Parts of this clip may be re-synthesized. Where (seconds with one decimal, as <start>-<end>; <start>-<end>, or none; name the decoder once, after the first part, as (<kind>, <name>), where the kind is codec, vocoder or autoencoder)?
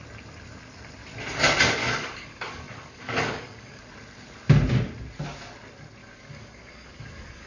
1.8-3.8 (codec, DAC); 6.0-7.5